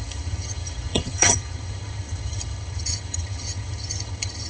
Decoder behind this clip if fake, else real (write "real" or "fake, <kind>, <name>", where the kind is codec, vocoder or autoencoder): fake, vocoder, HiFi-GAN